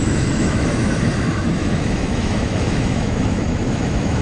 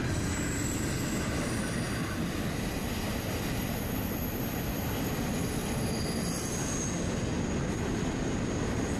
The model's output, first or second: first